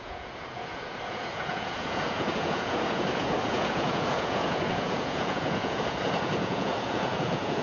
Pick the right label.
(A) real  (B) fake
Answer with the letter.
B